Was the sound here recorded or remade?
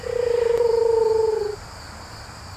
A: remade